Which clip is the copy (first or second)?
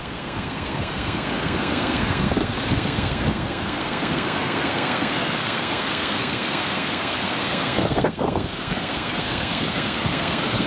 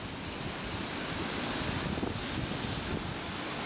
first